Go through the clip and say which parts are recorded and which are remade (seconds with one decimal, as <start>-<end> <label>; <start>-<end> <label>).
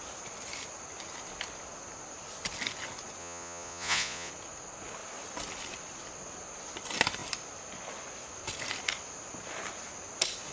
0.0-3.2 recorded; 3.2-4.3 remade; 4.3-10.5 recorded